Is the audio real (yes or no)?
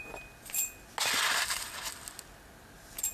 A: yes